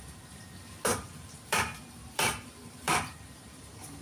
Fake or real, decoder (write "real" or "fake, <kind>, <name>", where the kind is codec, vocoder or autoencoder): fake, vocoder, BigVGAN v2